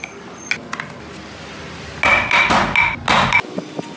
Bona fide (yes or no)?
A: yes